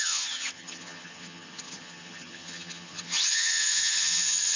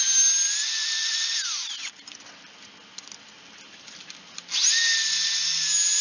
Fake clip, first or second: first